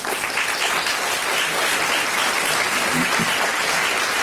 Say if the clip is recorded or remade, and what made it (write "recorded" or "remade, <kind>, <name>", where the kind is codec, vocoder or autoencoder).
recorded